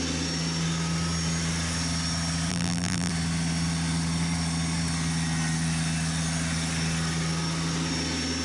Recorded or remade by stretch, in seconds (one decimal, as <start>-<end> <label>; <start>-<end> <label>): 0.0-2.5 recorded; 2.5-3.1 remade; 3.1-8.4 recorded